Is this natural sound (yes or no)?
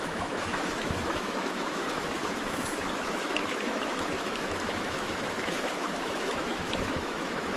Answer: no